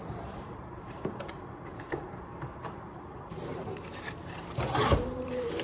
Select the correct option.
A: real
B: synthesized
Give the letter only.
B